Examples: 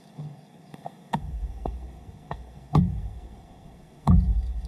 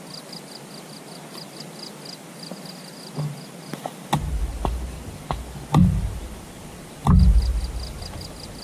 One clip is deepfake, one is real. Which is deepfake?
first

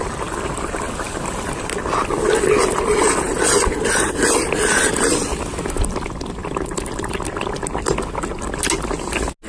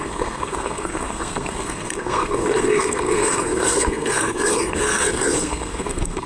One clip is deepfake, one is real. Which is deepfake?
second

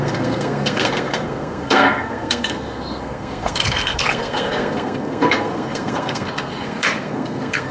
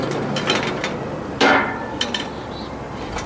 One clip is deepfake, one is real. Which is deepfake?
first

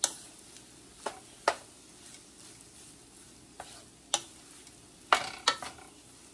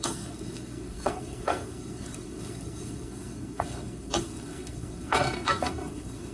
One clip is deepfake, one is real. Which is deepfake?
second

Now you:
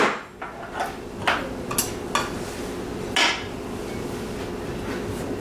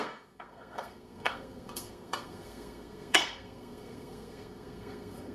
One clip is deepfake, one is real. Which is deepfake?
second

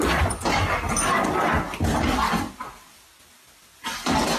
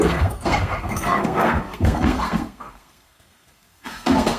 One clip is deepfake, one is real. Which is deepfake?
second